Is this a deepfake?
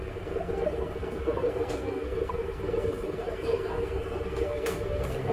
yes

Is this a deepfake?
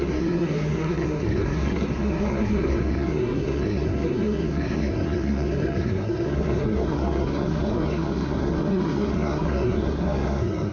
yes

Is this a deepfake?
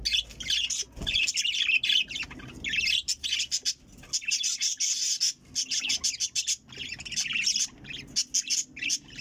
no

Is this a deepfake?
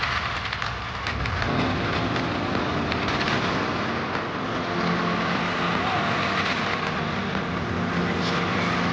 no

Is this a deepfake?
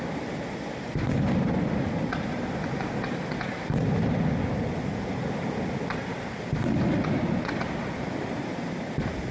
no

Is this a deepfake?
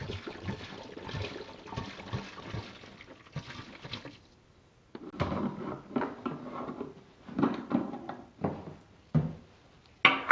no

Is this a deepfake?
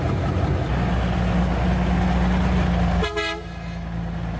no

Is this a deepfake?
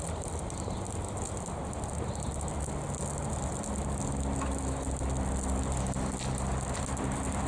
no